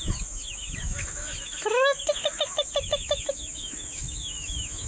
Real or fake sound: fake